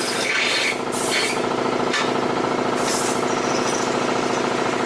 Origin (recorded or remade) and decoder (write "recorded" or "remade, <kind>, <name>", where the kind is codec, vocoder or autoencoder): recorded